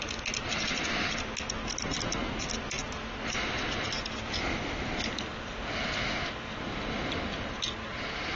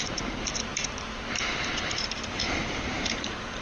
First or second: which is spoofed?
second